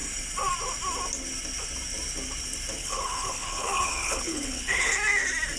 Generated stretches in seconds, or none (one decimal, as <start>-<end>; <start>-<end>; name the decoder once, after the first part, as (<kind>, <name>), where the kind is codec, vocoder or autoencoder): 2.8-4.9 (codec, HILCodec)